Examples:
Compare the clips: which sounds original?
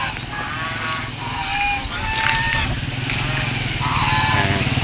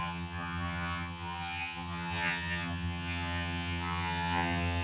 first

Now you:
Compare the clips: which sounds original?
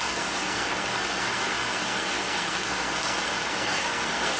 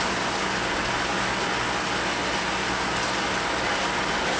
second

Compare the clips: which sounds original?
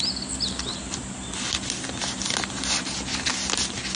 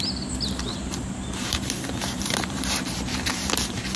first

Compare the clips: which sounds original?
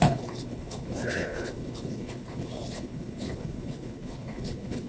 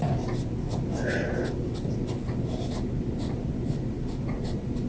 second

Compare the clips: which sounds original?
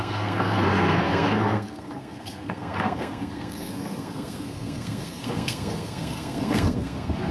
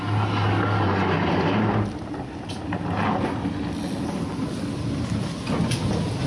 second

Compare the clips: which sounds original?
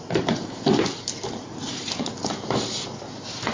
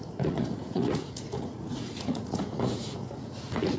first